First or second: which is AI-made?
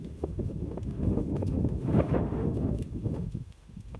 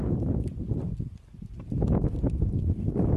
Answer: first